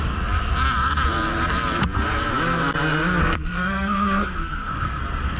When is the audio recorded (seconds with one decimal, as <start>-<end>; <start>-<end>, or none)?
0.0-3.2; 5.0-5.4